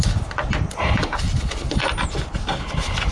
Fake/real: real